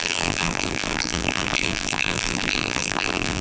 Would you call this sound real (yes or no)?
no